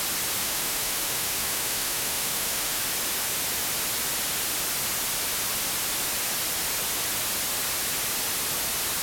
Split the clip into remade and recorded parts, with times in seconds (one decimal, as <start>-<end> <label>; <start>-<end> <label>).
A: 0.0-0.4 recorded; 0.4-2.8 remade; 2.8-9.0 recorded